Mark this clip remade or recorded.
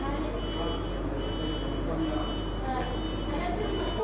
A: recorded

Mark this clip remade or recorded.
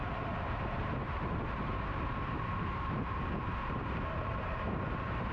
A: remade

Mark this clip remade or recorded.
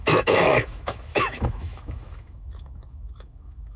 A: remade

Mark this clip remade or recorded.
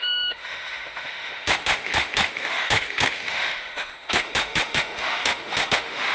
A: remade